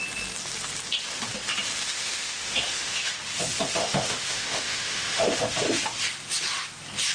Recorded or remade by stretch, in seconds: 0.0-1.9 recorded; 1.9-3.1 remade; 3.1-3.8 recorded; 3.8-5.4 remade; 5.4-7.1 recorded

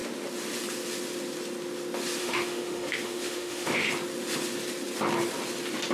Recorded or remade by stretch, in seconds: 0.0-2.2 recorded; 2.2-3.9 remade; 3.9-5.9 recorded

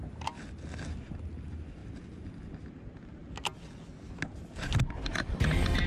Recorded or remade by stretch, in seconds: 0.0-5.9 recorded

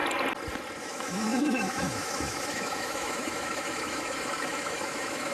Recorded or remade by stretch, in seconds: 0.0-0.8 recorded; 0.8-5.3 remade

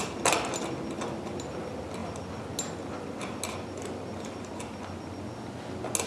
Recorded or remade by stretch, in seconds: 0.0-6.1 recorded

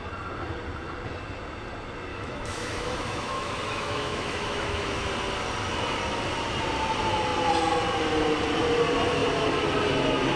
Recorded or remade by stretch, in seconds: 0.0-2.1 recorded; 2.1-5.1 remade; 5.1-10.4 recorded

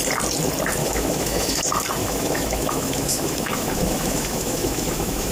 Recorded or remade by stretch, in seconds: 0.0-0.8 recorded; 0.8-1.6 remade; 1.6-2.0 recorded; 2.0-5.3 remade

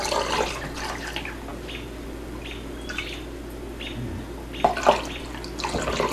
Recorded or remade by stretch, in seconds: 0.0-6.1 recorded